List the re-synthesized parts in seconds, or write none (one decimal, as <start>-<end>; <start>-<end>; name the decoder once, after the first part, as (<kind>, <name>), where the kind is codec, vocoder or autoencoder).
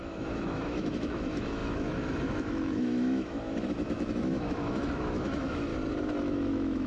0.0-5.7 (autoencoder, DAC-VAE); 6.2-6.9